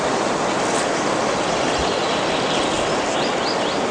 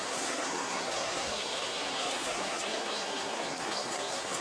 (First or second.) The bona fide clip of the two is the first